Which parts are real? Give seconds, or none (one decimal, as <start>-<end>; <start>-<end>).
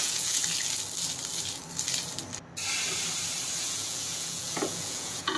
0.4-3.6